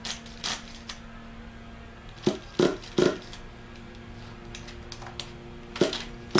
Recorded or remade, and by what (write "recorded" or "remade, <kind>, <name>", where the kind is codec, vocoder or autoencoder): recorded